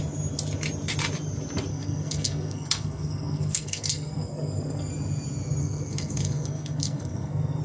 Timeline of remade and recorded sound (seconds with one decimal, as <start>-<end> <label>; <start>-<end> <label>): 0.0-1.7 recorded; 1.7-4.9 remade; 4.9-5.6 recorded; 5.6-7.6 remade

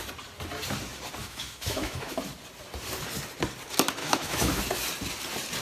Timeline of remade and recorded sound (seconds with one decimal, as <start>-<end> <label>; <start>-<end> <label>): 0.0-1.2 recorded; 1.2-2.2 remade; 2.2-4.0 recorded; 4.0-4.6 remade; 4.6-5.6 recorded

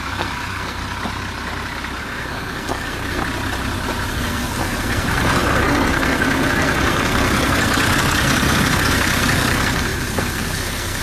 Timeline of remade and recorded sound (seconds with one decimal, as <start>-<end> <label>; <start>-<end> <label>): 0.0-0.8 remade; 0.8-2.0 recorded; 2.0-3.2 remade; 3.2-4.1 recorded; 4.1-11.0 remade

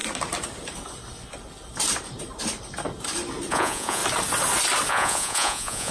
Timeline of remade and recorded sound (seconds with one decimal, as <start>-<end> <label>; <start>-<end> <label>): 0.0-3.5 recorded; 3.5-4.0 remade; 4.0-4.9 recorded; 4.9-5.9 remade

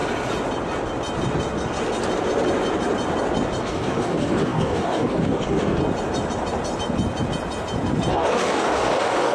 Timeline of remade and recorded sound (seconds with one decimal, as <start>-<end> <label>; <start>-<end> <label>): 0.0-3.6 recorded; 3.6-5.8 remade; 5.8-8.1 recorded; 8.1-9.3 remade